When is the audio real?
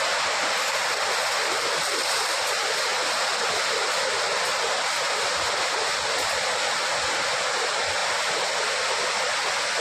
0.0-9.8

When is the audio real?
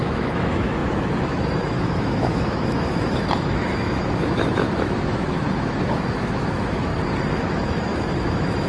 6.9-7.4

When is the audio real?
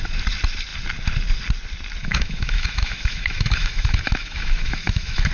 0.0-2.0